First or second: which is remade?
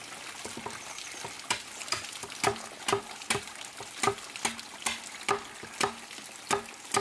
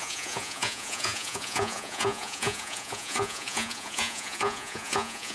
second